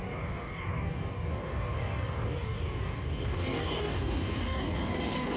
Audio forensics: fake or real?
fake